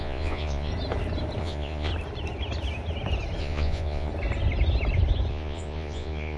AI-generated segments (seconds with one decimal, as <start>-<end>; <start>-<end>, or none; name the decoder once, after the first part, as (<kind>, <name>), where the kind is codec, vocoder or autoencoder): 0.0-0.7 (vocoder, Vocos); 1.4-1.9; 3.4-4.1; 5.3-6.4